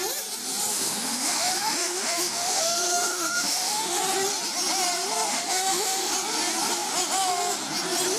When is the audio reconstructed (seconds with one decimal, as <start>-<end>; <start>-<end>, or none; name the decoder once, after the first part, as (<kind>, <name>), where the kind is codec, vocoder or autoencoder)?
0.7-4.0 (autoencoder, DAC-VAE); 5.3-6.1